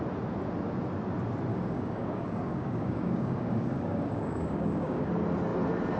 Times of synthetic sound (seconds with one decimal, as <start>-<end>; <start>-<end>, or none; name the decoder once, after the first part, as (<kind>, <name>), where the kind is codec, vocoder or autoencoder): 1.5-5.1 (codec, DAC)